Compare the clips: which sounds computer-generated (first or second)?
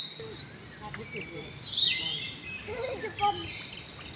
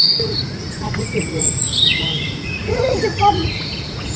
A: second